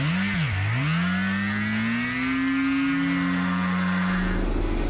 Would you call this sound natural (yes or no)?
yes